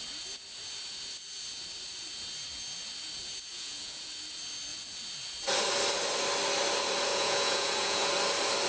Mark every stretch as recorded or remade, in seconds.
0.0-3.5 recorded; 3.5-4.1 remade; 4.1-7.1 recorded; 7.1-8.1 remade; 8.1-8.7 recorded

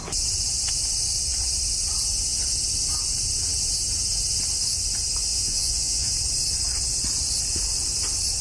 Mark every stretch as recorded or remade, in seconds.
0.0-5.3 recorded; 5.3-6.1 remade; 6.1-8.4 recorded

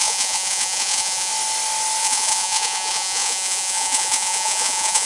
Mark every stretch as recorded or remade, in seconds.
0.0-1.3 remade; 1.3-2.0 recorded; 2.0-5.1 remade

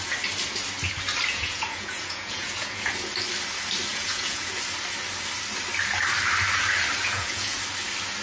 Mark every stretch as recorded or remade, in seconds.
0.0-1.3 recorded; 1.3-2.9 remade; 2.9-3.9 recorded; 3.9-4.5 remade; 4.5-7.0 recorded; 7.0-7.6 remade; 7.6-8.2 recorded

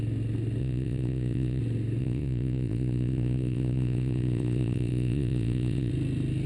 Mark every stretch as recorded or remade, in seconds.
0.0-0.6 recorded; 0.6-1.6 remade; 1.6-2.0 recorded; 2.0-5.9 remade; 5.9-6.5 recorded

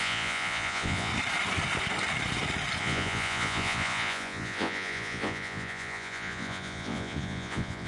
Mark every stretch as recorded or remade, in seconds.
0.0-1.1 remade; 1.1-2.8 recorded; 2.8-7.9 remade

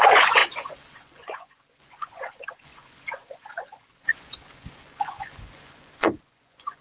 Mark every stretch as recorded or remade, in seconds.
0.0-6.8 remade

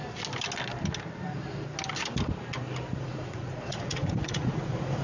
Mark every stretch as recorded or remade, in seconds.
0.0-3.0 recorded; 3.0-5.0 remade